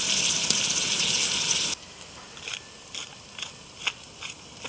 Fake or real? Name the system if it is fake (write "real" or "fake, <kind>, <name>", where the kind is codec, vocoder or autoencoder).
real